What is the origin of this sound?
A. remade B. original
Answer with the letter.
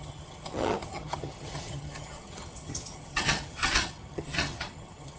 A